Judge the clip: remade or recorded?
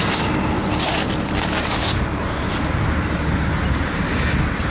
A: recorded